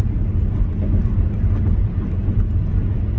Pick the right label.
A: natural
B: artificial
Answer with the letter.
A